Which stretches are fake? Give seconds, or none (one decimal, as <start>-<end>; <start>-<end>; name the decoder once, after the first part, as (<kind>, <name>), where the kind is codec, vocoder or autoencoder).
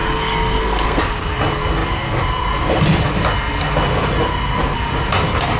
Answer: 0.0-1.0 (codec, SNAC)